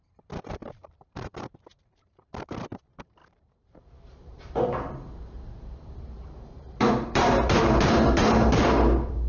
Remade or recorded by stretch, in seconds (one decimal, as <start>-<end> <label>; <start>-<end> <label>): 0.0-9.3 remade